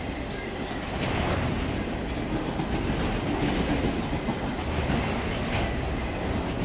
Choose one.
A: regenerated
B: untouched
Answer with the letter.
B